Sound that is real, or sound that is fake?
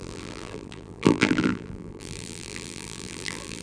fake